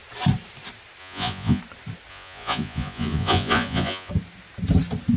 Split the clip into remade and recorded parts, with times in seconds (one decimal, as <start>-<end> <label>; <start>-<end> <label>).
0.0-1.0 recorded; 1.0-1.6 remade; 1.6-2.1 recorded; 2.1-4.1 remade; 4.1-5.2 recorded

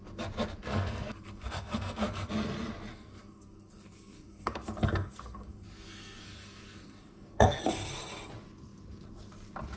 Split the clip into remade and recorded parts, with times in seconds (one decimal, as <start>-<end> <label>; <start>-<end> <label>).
0.0-0.7 recorded; 0.7-2.3 remade; 2.3-2.9 recorded; 2.9-7.6 remade; 7.6-9.8 recorded

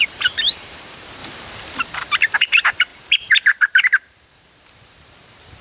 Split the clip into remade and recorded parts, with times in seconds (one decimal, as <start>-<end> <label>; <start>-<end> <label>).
0.0-5.6 remade

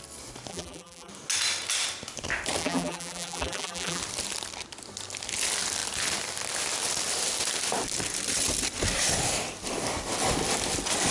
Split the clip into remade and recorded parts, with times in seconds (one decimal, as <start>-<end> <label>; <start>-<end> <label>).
0.0-0.5 recorded; 0.5-1.1 remade; 1.1-2.6 recorded; 2.6-4.0 remade; 4.0-11.1 recorded

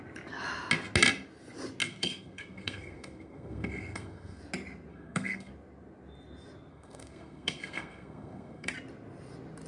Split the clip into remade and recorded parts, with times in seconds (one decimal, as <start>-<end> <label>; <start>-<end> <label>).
0.0-1.8 recorded; 1.8-4.4 remade; 4.4-4.9 recorded; 4.9-5.5 remade; 5.5-6.7 recorded; 6.7-8.7 remade; 8.7-9.7 recorded

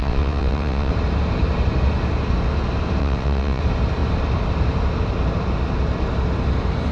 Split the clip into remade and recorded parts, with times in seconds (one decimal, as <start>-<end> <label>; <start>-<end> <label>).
0.0-0.9 remade; 0.9-3.0 recorded; 3.0-3.6 remade; 3.6-6.9 recorded

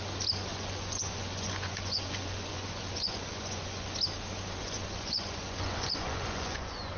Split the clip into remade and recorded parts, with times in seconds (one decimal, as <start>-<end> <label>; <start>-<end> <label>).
0.0-0.5 recorded; 0.5-3.9 remade; 3.9-4.6 recorded; 4.6-7.0 remade

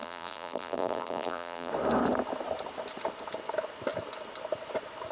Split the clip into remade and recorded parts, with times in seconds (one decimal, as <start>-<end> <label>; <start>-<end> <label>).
0.0-1.7 remade; 1.7-5.1 recorded